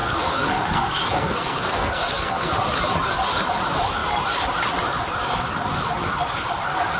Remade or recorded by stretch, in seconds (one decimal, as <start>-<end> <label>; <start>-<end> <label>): 0.0-2.5 remade; 2.5-7.0 recorded